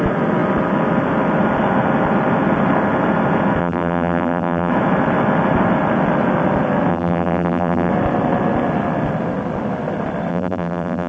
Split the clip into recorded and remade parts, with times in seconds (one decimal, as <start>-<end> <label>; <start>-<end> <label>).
0.0-3.6 recorded; 3.6-4.7 remade; 4.7-6.9 recorded; 6.9-7.9 remade; 7.9-10.3 recorded; 10.3-11.1 remade